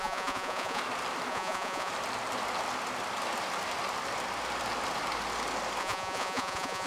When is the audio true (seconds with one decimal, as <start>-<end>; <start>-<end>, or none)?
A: 0.8-1.3; 1.9-5.8

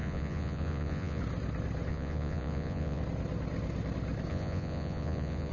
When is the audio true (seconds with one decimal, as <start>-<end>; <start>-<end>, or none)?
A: 1.2-1.9; 3.0-4.3

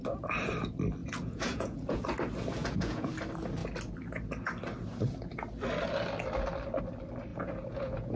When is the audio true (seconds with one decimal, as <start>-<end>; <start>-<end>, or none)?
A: 0.0-1.0; 2.0-2.6; 3.1-7.3

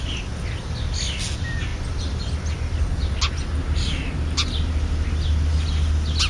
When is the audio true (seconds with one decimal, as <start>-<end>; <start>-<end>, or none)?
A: 0.0-6.3

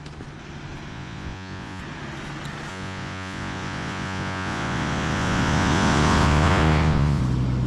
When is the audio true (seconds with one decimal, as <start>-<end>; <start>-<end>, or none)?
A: 0.0-0.9; 1.8-2.7; 7.2-7.7

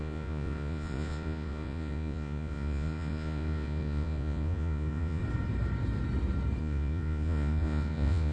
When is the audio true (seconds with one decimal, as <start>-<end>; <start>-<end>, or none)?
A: 5.2-6.6

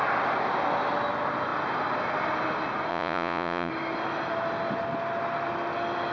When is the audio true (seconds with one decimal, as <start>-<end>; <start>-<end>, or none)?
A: 0.0-2.9; 3.7-6.1

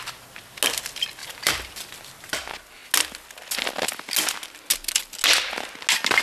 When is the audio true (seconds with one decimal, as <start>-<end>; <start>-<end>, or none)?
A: 0.0-6.2